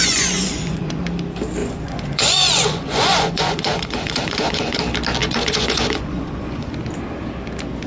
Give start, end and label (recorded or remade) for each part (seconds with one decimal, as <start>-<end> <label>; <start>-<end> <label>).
0.0-1.0 remade; 1.0-1.6 recorded; 1.6-4.8 remade; 4.8-5.2 recorded; 5.2-6.7 remade; 6.7-7.9 recorded